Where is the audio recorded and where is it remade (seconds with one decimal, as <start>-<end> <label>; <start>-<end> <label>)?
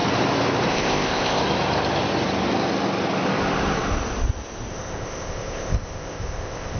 0.0-0.7 recorded; 0.7-1.4 remade; 1.4-4.7 recorded; 4.7-6.8 remade